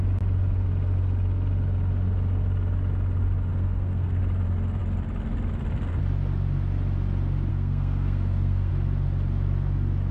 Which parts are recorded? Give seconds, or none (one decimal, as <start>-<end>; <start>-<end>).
0.0-3.5; 4.2-7.5; 8.7-10.1